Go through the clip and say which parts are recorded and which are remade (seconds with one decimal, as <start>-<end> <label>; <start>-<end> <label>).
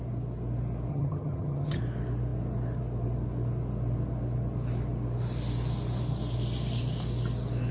0.0-0.9 recorded; 0.9-1.8 remade; 1.8-7.7 recorded